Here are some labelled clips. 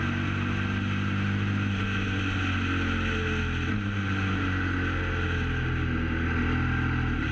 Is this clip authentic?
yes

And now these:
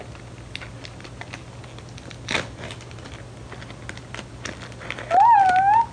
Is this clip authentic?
yes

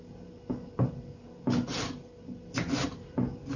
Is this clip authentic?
yes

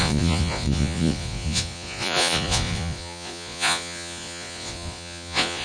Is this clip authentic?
no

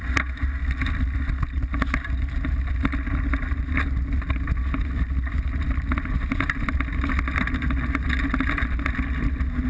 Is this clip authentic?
yes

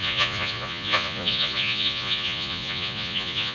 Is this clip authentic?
no